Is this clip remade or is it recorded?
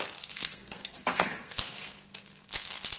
remade